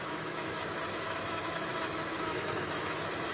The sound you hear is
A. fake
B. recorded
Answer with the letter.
A